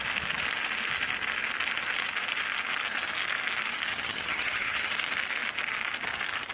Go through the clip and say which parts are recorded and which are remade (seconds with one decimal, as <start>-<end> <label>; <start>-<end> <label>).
0.0-3.9 recorded; 3.9-4.9 remade; 4.9-6.5 recorded